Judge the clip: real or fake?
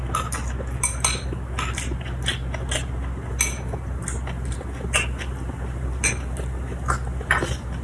real